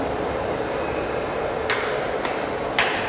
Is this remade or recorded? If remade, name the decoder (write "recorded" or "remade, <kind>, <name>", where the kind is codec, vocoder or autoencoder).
recorded